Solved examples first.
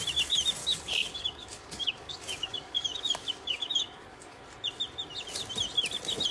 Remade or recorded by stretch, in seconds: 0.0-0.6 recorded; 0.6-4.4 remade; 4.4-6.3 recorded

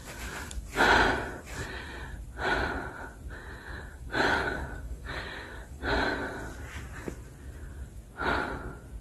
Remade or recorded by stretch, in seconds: 0.0-3.9 recorded; 3.9-6.2 remade; 6.2-9.0 recorded

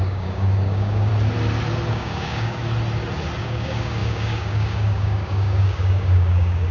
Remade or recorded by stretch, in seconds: 0.0-1.1 remade; 1.1-1.9 recorded; 1.9-2.6 remade; 2.6-3.4 recorded; 3.4-6.7 remade

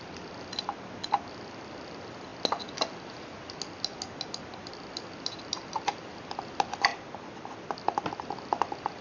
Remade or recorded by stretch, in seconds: 0.0-9.0 recorded

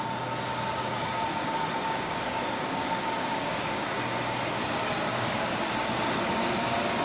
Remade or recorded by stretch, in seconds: 0.0-0.5 recorded; 0.5-4.1 remade; 4.1-5.1 recorded; 5.1-7.0 remade

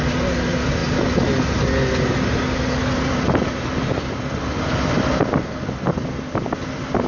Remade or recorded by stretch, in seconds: 0.0-7.1 recorded

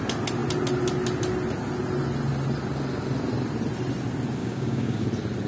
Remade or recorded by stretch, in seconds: 0.0-4.4 recorded; 4.4-5.0 remade; 5.0-5.5 recorded

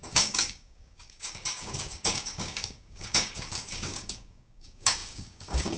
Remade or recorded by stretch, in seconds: 0.0-5.8 remade